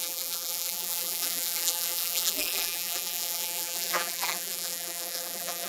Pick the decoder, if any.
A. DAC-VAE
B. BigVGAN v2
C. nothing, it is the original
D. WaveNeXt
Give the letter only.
B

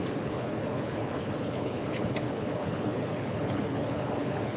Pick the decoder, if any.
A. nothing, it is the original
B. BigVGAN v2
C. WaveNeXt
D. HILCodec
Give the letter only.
D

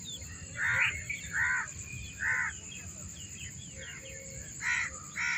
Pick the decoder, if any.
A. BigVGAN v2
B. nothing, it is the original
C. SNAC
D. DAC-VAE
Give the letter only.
B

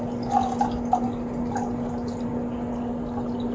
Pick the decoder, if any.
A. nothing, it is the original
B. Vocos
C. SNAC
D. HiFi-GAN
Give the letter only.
A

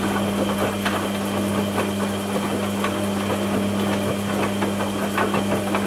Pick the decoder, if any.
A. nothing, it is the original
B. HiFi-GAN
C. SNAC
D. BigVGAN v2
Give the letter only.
A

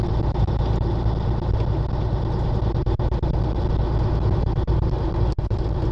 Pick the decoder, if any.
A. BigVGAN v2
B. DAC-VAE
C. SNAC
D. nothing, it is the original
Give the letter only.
D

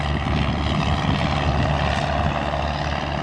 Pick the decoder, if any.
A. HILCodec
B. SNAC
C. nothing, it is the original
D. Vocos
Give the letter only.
C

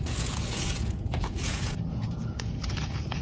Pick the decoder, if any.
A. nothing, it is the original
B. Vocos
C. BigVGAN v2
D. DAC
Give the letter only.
B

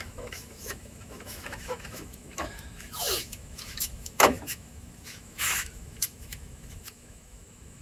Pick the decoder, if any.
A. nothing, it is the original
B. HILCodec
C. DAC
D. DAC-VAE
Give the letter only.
D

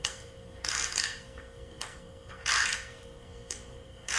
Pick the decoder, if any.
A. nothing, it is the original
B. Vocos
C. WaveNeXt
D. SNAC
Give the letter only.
D